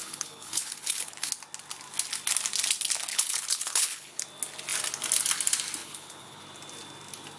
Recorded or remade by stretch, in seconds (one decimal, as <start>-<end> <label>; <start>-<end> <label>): 0.0-1.3 remade; 1.3-3.1 recorded; 3.1-4.2 remade; 4.2-5.8 recorded; 5.8-6.4 remade; 6.4-7.4 recorded